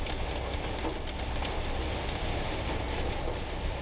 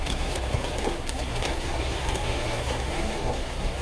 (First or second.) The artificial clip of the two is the second